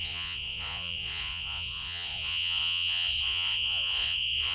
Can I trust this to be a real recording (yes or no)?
no